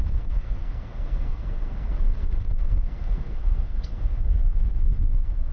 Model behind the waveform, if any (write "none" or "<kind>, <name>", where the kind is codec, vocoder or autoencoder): codec, SNAC